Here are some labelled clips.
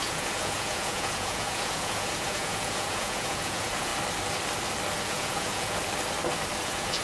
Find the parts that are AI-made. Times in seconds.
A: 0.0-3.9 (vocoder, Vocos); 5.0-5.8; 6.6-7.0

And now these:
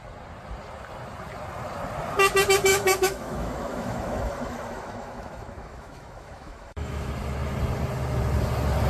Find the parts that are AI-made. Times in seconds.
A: 2.7-7.1 (autoencoder, DAC-VAE)

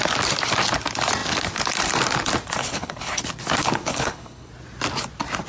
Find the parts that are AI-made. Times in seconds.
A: 2.6-3.2 (codec, HILCodec); 3.6-4.5

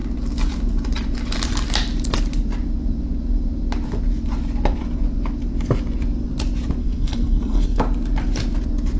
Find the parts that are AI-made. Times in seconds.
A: 6.8-7.8 (codec, SNAC)

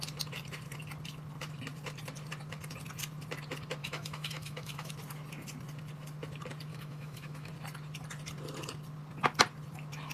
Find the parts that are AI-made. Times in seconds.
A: 3.8-4.9 (autoencoder, DAC-VAE); 6.7-7.5